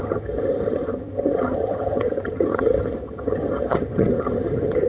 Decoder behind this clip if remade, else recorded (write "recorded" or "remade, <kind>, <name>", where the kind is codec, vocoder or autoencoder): remade, vocoder, HiFi-GAN